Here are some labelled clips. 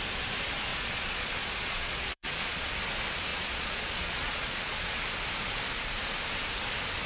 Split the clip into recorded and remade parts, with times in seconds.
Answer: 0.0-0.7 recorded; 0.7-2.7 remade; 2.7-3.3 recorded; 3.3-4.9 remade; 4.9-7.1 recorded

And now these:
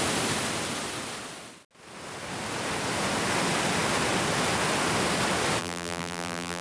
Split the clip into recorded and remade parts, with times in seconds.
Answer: 0.0-5.6 recorded; 5.6-6.6 remade